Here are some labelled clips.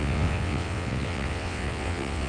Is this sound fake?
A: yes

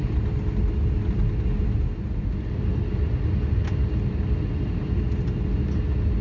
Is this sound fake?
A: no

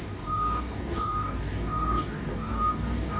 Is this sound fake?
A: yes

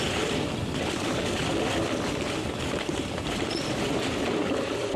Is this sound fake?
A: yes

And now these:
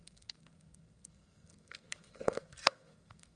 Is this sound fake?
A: yes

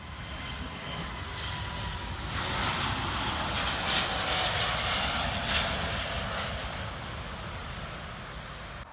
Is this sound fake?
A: no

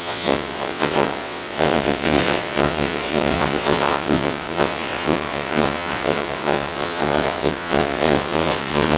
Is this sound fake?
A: yes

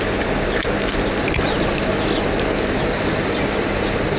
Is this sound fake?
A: no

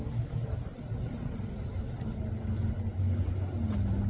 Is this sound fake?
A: no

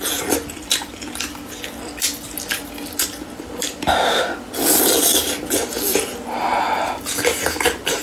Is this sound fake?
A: no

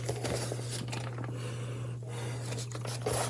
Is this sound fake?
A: no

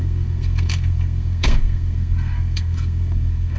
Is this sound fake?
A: yes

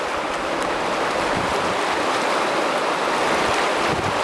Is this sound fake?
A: no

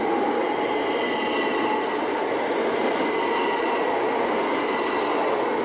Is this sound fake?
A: no